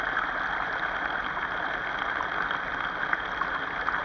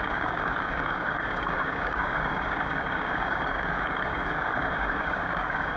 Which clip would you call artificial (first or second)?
second